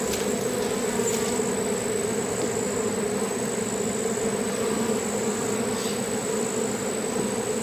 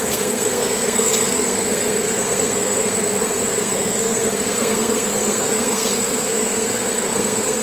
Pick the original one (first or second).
first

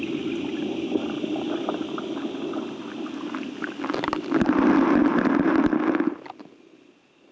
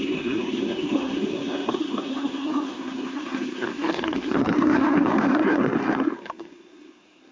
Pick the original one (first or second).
first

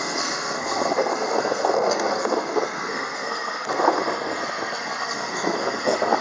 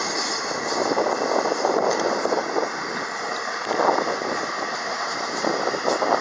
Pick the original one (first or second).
second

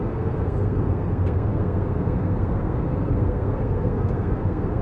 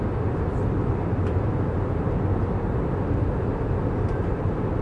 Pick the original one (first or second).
second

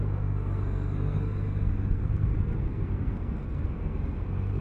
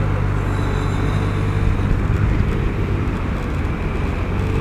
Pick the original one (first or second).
second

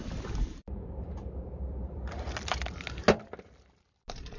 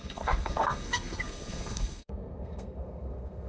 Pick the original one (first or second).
first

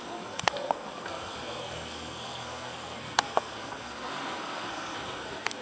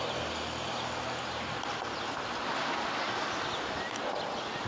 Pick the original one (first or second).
second